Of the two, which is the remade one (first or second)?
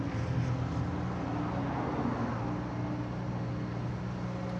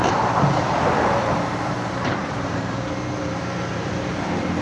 second